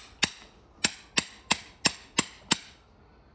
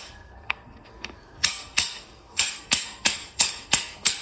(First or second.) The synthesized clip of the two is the second